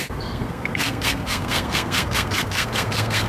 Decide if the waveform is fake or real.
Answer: fake